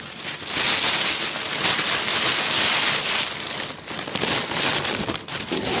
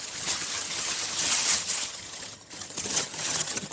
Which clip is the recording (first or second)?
first